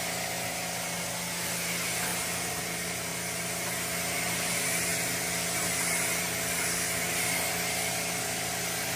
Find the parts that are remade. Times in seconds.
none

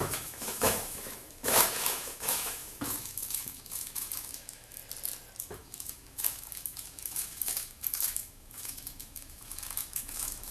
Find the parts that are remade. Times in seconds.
0.0-4.8 (autoencoder, DAC-VAE); 5.4-10.5

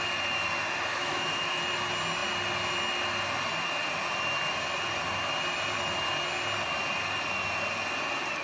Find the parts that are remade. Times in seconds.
0.9-1.6 (autoencoder, DAC-VAE)